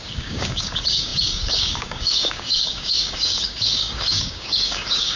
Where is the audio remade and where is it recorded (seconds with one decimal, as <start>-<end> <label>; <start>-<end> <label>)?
0.0-5.2 remade